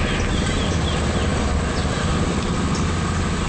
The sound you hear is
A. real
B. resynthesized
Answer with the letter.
A